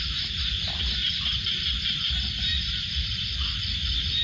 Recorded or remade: recorded